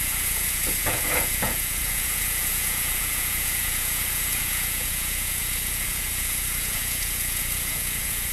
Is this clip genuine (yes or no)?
no